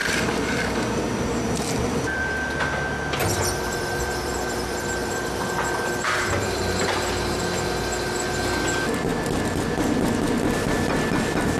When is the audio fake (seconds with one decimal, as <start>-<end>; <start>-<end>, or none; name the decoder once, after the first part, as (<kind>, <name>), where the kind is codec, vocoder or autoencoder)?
0.0-2.2 (vocoder, BigVGAN v2); 3.2-7.4